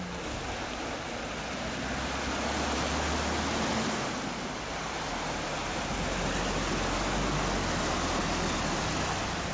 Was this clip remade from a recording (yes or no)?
no